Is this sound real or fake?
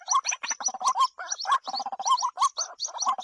real